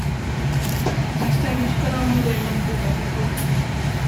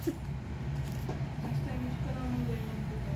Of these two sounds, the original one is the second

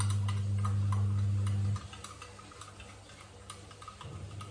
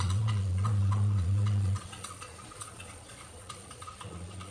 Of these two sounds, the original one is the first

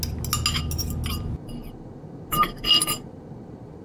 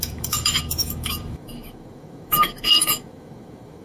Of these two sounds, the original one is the first